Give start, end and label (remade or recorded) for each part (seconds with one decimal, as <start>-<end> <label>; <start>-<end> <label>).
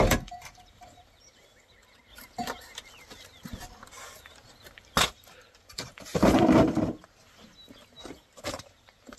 0.0-2.1 remade; 2.1-5.0 recorded; 5.0-6.1 remade; 6.1-8.5 recorded; 8.5-9.2 remade